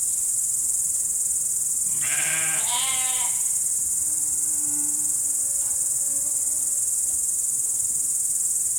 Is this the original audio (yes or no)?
yes